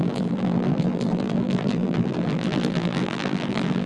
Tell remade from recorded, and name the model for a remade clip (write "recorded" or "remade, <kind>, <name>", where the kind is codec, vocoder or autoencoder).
remade, vocoder, BigVGAN v2